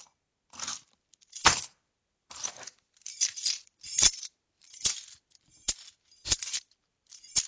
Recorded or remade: remade